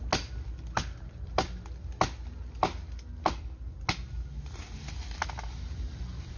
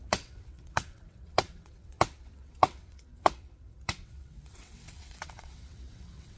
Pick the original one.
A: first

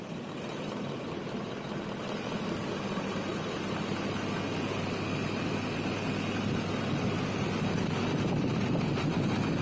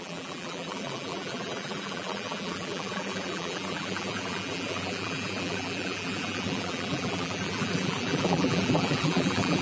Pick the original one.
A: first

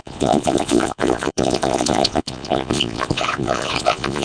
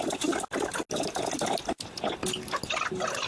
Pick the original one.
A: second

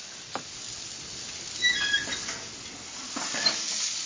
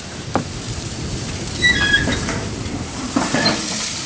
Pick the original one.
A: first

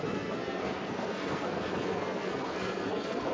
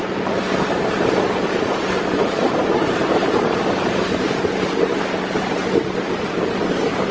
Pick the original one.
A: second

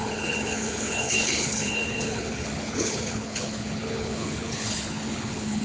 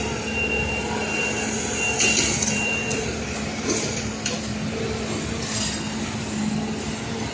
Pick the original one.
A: second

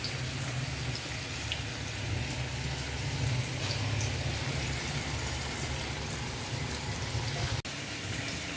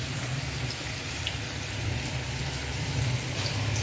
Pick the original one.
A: first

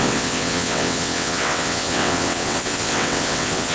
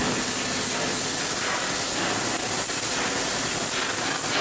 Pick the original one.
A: second